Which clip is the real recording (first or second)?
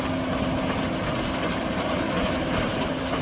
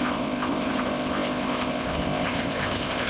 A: first